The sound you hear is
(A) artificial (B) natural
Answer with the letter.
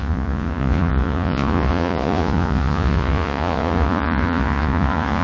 A